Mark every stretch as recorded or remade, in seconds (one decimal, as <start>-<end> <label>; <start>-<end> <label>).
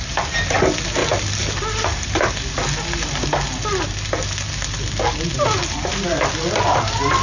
0.0-7.2 recorded